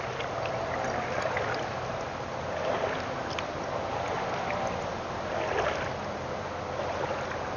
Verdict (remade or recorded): recorded